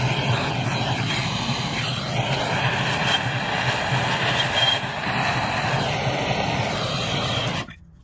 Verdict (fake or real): real